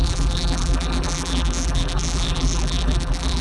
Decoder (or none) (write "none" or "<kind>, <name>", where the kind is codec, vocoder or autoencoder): vocoder, BigVGAN v2